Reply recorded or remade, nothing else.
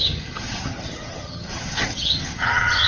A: remade